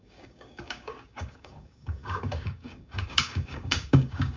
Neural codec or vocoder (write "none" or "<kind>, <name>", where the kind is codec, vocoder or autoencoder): codec, DAC